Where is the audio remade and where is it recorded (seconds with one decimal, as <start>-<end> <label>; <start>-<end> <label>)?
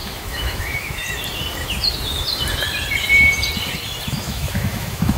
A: 0.0-1.0 remade; 1.0-4.1 recorded; 4.1-5.2 remade